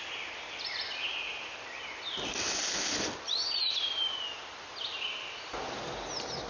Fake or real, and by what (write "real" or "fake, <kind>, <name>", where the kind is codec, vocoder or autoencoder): real